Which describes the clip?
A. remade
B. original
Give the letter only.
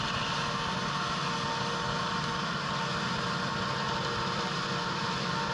B